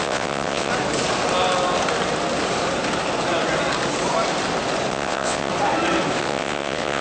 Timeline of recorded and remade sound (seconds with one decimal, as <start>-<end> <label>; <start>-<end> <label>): 0.0-0.7 remade; 0.7-4.9 recorded; 4.9-5.5 remade; 5.5-6.2 recorded; 6.2-7.0 remade